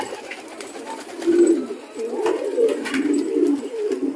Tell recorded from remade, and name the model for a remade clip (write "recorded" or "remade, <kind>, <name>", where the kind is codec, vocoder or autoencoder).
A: recorded